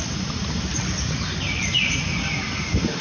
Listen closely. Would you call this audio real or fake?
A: real